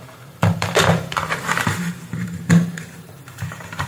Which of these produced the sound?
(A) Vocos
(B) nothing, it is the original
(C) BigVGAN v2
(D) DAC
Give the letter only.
C